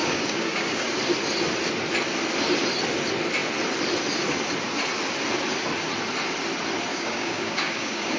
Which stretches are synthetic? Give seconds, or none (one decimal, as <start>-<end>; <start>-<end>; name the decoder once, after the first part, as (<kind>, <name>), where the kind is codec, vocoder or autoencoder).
0.0-0.9 (codec, DAC); 6.9-8.2